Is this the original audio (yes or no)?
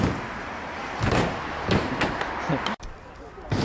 yes